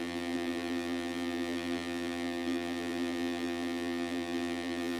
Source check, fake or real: fake